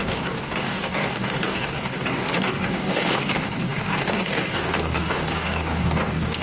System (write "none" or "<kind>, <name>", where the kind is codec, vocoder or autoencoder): codec, DAC